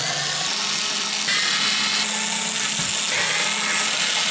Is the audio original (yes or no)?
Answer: yes